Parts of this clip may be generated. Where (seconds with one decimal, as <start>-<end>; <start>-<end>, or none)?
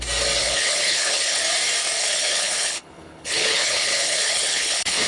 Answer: 0.4-1.4; 2.0-5.1